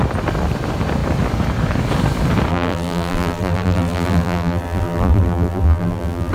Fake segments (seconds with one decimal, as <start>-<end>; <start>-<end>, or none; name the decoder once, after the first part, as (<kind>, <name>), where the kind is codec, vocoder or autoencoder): 2.5-6.3 (vocoder, BigVGAN v2)